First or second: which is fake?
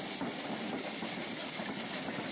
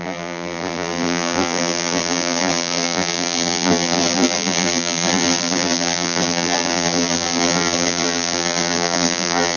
second